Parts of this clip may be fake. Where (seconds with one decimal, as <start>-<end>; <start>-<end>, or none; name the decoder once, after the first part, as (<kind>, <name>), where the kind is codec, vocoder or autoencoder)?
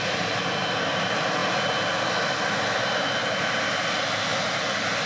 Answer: none